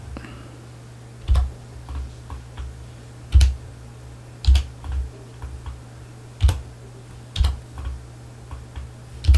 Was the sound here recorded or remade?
recorded